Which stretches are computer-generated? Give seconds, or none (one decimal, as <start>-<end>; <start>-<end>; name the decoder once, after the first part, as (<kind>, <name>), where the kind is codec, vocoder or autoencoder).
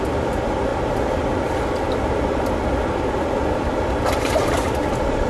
none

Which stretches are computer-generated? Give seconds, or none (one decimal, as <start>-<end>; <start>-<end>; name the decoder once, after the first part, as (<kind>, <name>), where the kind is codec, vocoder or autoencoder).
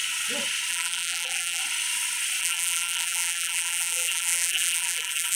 0.7-1.6 (vocoder, BigVGAN v2); 2.4-5.4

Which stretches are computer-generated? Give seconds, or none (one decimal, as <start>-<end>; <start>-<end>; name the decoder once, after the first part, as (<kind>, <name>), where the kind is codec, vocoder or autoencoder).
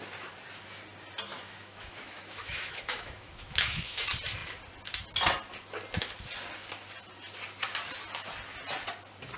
1.3-4.0 (autoencoder, DAC-VAE)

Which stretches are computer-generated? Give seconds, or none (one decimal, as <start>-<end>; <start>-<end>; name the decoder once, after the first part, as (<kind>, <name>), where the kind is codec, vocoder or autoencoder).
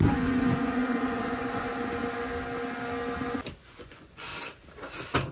0.0-1.7 (vocoder, Vocos); 3.6-4.3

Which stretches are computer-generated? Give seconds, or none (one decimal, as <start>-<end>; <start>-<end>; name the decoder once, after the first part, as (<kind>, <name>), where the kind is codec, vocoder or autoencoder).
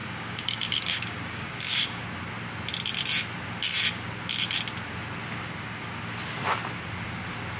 0.0-2.0 (codec, DAC)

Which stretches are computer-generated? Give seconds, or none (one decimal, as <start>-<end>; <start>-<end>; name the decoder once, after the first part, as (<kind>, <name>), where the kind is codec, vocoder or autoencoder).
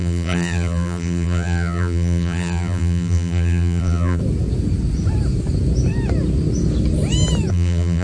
0.0-4.2 (vocoder, BigVGAN v2); 7.5-8.0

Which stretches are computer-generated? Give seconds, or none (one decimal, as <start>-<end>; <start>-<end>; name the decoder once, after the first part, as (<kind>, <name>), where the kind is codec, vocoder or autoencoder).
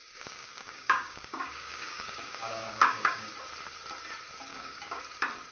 0.0-3.3 (codec, DAC); 4.5-5.0